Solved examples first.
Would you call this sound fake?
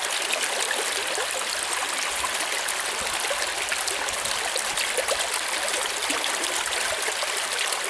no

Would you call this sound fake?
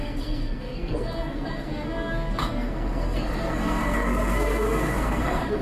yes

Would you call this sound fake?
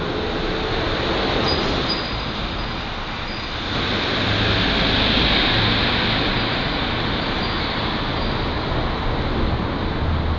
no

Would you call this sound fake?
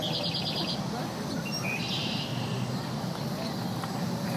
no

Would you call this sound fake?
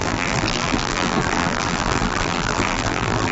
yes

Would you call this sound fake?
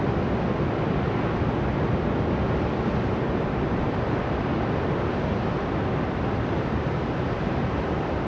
no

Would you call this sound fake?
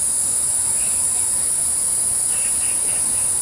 yes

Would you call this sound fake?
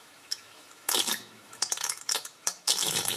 yes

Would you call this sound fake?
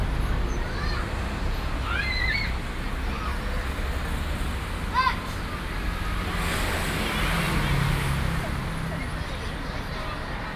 no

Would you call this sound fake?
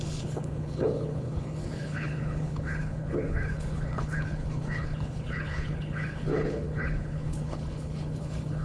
yes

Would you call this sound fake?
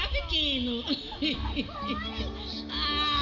no